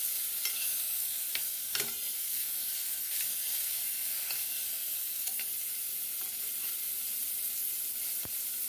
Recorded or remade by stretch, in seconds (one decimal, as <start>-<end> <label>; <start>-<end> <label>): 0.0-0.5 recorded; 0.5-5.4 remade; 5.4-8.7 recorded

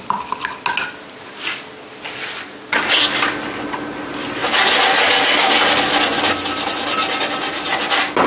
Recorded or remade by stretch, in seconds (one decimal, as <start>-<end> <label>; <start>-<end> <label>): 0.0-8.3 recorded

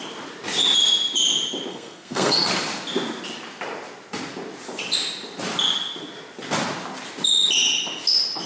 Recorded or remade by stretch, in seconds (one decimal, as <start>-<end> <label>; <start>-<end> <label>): 0.0-1.7 recorded; 1.7-2.5 remade; 2.5-8.5 recorded

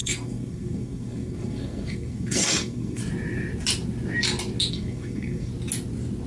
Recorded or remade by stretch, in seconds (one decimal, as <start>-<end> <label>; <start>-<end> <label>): 0.0-3.0 remade; 3.0-4.7 recorded; 4.7-5.5 remade; 5.5-6.3 recorded